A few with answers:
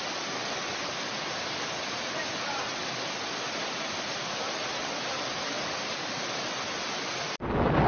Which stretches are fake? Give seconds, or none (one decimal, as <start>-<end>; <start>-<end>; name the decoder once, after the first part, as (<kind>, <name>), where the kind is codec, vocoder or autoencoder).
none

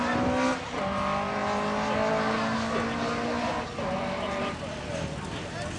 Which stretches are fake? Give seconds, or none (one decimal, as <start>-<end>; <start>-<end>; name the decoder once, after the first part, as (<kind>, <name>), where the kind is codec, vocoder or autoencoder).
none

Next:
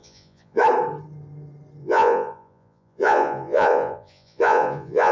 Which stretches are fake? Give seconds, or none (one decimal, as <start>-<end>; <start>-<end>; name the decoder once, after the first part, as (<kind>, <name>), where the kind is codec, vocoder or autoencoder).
0.0-0.6 (vocoder, Vocos); 1.8-5.1

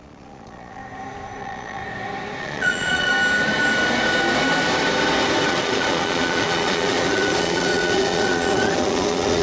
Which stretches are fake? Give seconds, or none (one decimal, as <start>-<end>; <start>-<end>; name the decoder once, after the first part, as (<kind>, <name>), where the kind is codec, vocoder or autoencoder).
0.0-0.8 (vocoder, Vocos); 1.4-1.8; 2.4-3.1; 5.5-9.4

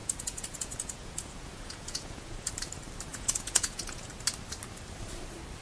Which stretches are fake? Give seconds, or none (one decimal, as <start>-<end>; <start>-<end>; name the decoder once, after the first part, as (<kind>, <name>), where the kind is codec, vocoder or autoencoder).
0.0-2.5 (vocoder, Vocos); 3.1-4.1